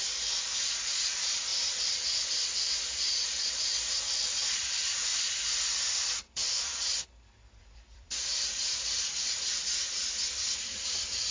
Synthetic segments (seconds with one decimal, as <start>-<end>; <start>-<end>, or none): 0.0-5.1; 5.9-6.4; 7.6-11.3